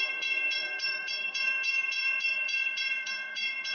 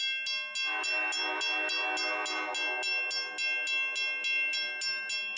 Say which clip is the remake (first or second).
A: first